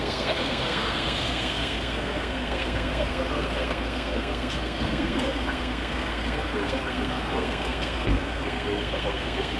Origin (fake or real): fake